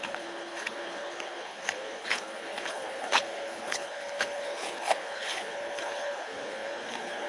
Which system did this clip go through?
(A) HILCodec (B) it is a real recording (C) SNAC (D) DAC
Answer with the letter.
A